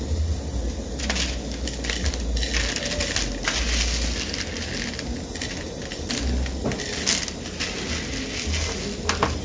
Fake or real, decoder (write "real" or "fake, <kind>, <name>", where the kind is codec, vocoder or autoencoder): real